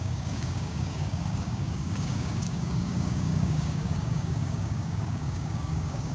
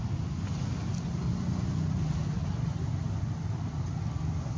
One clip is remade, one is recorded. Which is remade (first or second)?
first